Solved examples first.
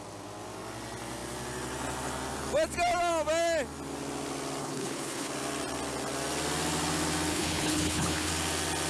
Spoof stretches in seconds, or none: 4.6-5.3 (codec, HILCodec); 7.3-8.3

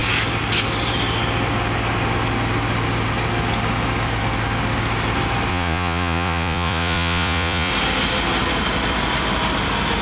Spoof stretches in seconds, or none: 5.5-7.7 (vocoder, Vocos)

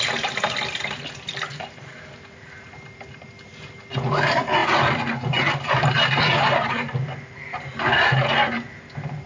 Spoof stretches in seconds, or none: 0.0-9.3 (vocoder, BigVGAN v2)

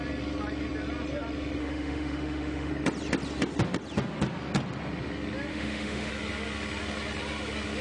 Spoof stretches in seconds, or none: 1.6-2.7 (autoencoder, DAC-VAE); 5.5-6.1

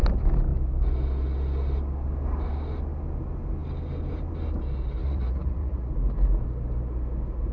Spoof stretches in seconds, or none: 5.0-5.9 (vocoder, Vocos)

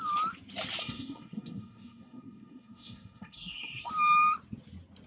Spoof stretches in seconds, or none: 0.8-3.9 (codec, SNAC)